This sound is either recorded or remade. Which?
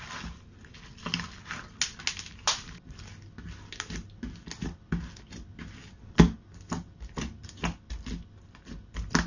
recorded